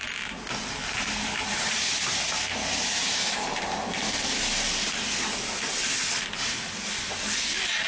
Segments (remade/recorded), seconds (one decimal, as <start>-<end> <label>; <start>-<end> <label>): 0.0-0.8 recorded; 0.8-1.8 remade; 1.8-7.9 recorded